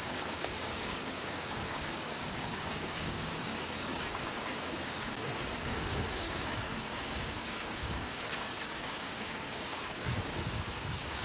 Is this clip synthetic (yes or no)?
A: yes